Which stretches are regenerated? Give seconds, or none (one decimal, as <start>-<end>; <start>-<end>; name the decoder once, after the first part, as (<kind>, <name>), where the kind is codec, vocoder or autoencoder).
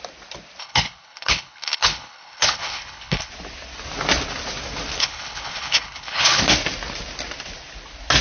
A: 0.6-3.3 (codec, HILCodec); 5.0-6.4